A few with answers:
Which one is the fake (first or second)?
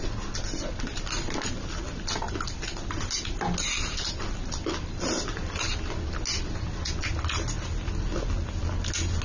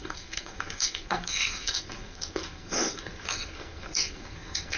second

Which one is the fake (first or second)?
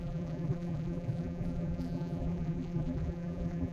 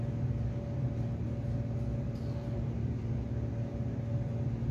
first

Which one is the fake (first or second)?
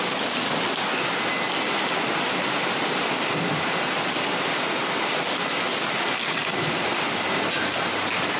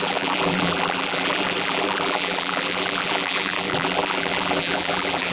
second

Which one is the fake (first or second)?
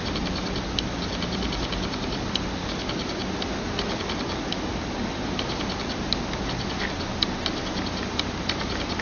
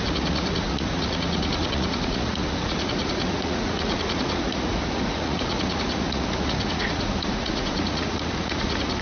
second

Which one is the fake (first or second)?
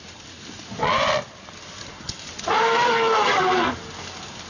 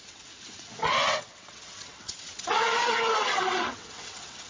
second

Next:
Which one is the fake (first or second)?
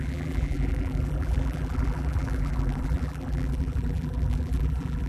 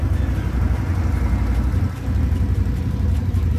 first